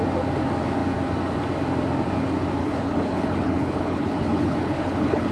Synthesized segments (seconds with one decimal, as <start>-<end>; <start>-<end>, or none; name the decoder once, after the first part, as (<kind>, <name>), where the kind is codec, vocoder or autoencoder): 2.6-5.3 (codec, HILCodec)